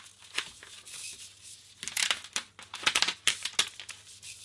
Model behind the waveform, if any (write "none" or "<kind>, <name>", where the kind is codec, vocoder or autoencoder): none